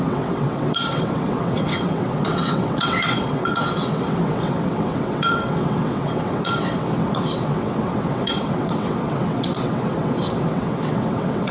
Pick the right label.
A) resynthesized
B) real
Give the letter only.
A